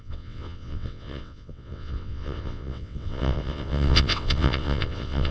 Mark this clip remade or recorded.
remade